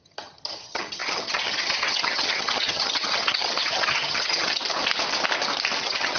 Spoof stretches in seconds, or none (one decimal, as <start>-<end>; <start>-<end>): 0.0-4.6; 5.8-6.2